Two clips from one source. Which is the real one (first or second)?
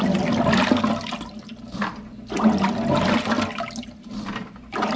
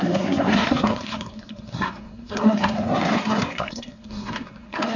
first